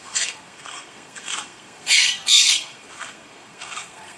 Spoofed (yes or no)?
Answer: yes